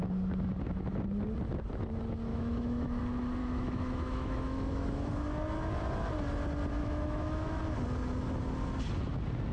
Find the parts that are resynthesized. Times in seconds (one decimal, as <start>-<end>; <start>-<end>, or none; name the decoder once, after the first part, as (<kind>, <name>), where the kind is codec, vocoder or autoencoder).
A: 2.3-3.0 (autoencoder, DAC-VAE); 3.4-5.1; 6.8-7.6